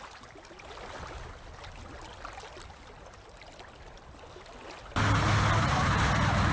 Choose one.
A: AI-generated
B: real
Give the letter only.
B